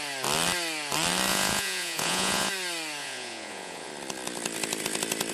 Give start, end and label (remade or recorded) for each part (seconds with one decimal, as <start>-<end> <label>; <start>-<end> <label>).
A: 0.0-1.3 recorded; 1.3-2.5 remade; 2.5-3.0 recorded; 3.0-3.9 remade; 3.9-5.3 recorded